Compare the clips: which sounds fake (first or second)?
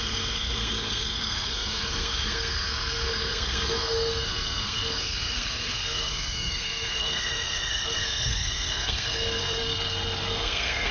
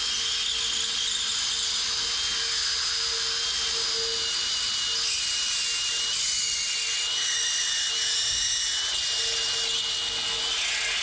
first